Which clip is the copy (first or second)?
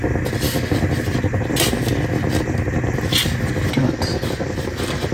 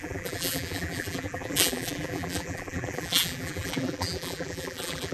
second